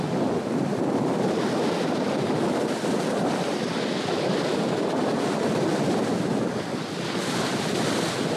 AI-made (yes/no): no